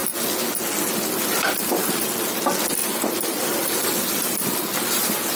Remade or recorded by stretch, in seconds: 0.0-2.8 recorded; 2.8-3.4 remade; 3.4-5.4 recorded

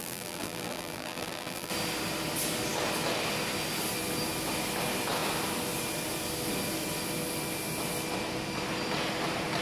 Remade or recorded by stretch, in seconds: 0.0-1.7 remade; 1.7-9.6 recorded

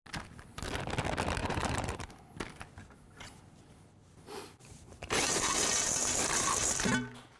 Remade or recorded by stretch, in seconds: 0.0-1.4 recorded; 1.4-2.1 remade; 2.1-4.0 recorded; 4.0-7.4 remade